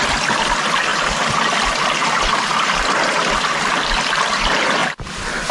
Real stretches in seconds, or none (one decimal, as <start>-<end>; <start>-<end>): 0.0-5.5